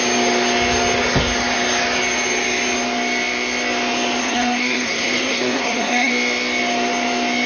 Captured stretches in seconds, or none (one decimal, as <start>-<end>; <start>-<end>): 0.0-4.2; 6.1-7.5